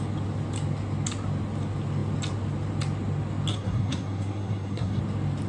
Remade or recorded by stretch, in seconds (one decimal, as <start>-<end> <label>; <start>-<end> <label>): 0.0-3.5 recorded; 3.5-5.0 remade; 5.0-5.5 recorded